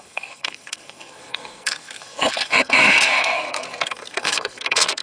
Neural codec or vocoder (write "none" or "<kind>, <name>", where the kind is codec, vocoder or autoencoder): codec, SNAC